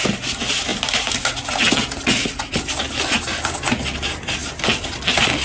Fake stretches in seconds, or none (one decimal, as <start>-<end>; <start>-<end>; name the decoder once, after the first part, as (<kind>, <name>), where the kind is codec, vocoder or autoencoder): none